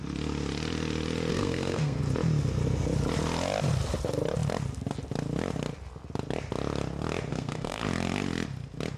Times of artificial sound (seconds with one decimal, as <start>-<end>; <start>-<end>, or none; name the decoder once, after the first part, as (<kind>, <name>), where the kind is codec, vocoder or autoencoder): 1.3-2.0 (codec, SNAC); 7.3-7.8